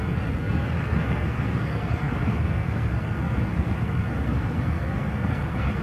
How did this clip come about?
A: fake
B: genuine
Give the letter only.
A